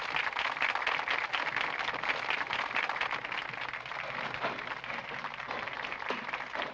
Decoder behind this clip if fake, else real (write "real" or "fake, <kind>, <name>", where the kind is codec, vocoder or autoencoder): real